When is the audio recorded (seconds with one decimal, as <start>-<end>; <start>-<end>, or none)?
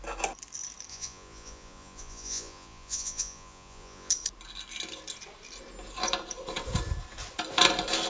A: 0.0-0.9; 4.1-8.1